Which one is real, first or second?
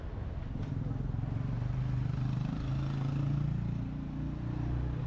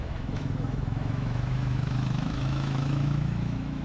first